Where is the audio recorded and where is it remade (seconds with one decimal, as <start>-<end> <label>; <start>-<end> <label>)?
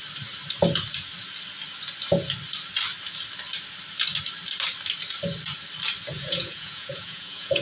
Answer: 0.0-6.1 recorded; 6.1-7.6 remade